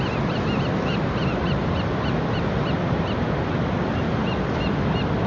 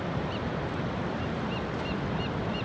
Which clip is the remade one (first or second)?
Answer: second